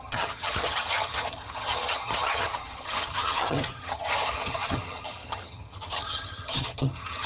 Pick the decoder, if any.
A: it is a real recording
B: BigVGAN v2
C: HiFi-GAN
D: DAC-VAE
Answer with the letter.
C